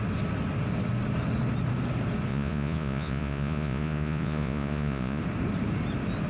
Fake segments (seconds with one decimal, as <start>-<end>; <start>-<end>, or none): 2.3-5.2